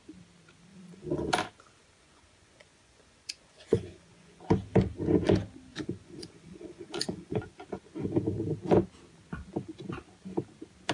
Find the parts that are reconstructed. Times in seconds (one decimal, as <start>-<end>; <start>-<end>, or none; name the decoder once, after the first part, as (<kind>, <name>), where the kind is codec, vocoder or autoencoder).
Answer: 0.7-1.3 (vocoder, Vocos); 1.8-4.4; 5.7-7.5

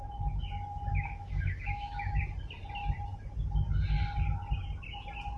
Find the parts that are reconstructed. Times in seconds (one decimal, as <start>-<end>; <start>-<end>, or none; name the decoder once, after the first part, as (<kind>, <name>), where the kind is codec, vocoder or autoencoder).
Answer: 0.9-2.2 (autoencoder, DAC-VAE)

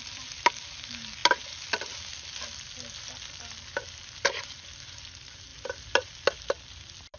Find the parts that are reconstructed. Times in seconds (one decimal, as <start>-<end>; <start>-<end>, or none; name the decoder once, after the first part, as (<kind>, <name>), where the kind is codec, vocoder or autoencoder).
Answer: none

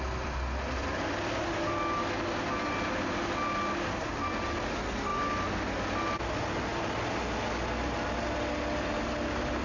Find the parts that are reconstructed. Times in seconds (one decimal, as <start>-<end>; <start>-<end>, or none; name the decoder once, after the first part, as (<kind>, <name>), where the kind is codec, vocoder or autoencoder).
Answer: none

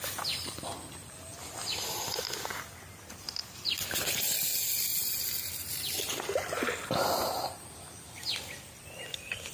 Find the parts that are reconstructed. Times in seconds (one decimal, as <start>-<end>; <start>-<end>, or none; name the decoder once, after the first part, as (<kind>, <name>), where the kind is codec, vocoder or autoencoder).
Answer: none

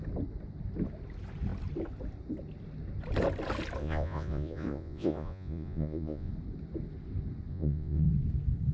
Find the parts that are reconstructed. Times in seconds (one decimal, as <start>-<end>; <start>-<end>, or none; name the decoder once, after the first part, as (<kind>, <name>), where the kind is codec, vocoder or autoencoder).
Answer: 3.8-6.3 (vocoder, Vocos); 7.5-8.1